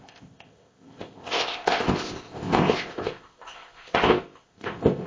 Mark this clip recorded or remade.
remade